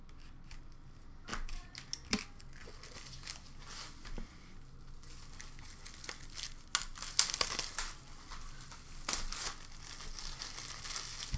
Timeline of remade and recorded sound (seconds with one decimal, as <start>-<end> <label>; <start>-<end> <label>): 0.0-11.4 recorded